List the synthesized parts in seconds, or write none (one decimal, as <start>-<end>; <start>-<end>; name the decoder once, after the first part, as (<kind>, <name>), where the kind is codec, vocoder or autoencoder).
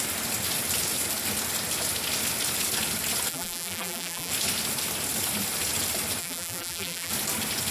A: 3.3-4.3 (vocoder, BigVGAN v2); 6.2-7.1